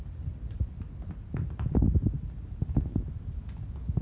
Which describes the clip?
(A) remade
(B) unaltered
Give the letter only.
B